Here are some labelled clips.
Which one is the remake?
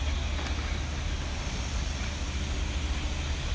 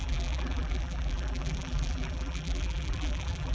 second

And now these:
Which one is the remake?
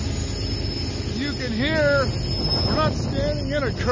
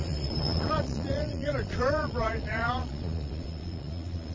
second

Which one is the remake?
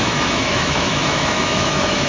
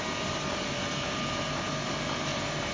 first